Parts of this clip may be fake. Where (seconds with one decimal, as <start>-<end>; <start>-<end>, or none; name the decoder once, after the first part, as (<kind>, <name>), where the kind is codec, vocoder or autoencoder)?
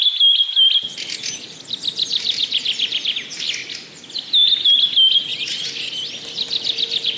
none